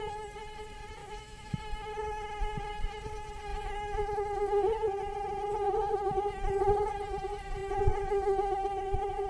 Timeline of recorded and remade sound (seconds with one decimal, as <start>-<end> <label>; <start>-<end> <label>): 0.0-1.0 recorded; 1.0-1.6 remade; 1.6-9.3 recorded